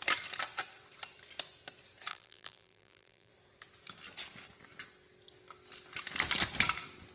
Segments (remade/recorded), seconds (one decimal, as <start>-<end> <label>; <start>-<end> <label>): 0.0-2.1 recorded; 2.1-3.3 remade; 3.3-7.1 recorded